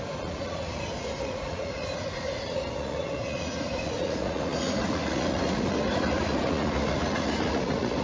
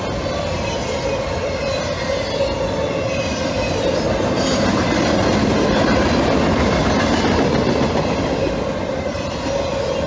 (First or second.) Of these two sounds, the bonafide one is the second